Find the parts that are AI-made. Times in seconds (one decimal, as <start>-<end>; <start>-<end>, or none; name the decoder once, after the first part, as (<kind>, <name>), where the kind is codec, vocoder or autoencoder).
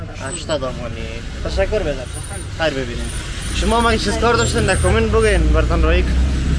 none